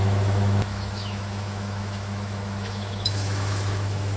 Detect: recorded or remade remade